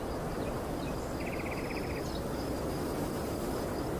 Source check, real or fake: real